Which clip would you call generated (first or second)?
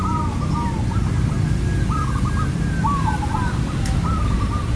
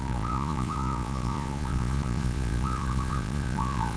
second